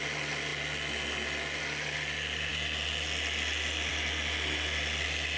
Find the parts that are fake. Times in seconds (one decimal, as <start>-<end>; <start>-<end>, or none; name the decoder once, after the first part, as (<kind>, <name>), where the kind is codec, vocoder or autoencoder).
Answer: none